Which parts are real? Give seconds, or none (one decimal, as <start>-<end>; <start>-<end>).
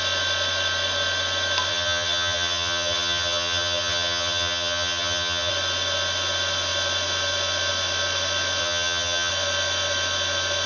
0.0-1.7; 5.5-8.6; 9.3-10.7